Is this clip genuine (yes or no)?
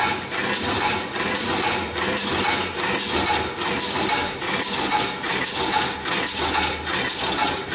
yes